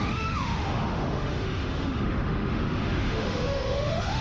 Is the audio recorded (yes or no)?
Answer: no